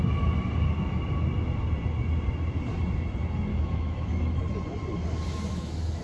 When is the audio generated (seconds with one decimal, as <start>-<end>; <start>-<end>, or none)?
3.5-4.4; 5.5-6.0